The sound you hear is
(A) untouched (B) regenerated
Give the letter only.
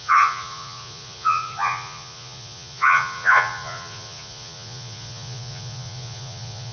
B